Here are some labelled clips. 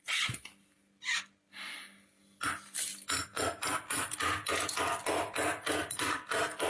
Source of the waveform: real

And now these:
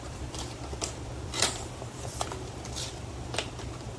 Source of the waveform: fake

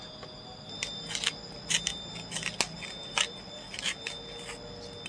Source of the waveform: real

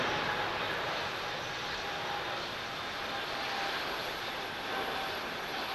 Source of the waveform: real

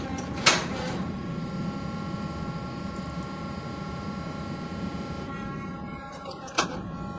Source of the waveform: fake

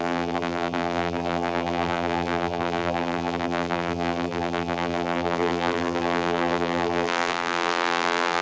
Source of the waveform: fake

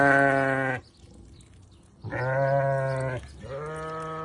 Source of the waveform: real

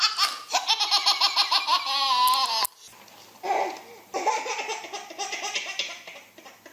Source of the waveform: real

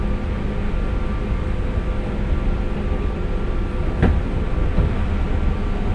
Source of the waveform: real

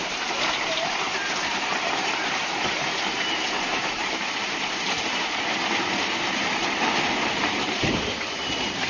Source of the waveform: fake